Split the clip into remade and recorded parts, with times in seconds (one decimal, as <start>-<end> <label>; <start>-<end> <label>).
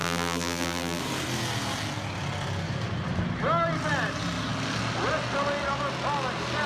0.0-1.0 remade; 1.0-6.7 recorded